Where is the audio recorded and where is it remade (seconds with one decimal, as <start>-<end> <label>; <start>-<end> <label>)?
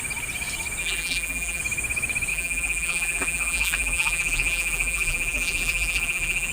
0.0-0.8 recorded; 0.8-1.6 remade; 1.6-2.3 recorded; 2.3-6.5 remade